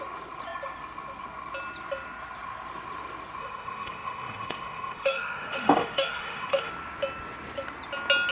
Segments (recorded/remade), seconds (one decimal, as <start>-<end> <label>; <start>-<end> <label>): 0.0-3.4 recorded; 3.4-6.7 remade; 6.7-8.3 recorded